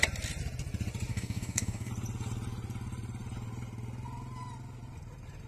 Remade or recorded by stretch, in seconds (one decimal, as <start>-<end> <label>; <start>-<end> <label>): 0.0-1.1 recorded; 1.1-1.9 remade; 1.9-5.5 recorded